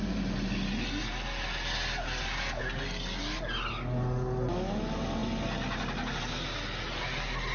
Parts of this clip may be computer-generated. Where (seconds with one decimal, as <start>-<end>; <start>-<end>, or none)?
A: none